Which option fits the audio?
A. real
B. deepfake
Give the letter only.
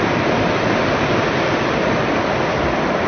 A